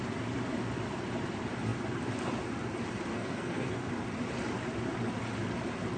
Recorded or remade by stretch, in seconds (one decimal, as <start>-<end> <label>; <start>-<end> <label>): 0.0-3.1 recorded; 3.1-3.9 remade; 3.9-6.0 recorded